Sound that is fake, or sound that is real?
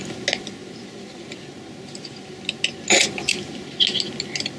real